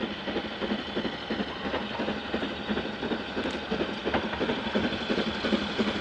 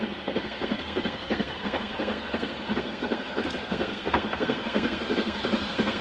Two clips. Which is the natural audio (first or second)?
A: first